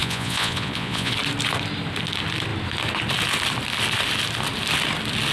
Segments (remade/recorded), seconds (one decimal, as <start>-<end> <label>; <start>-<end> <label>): 0.0-1.1 remade; 1.1-5.3 recorded